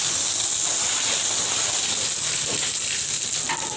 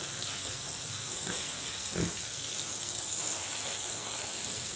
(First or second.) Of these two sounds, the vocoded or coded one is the second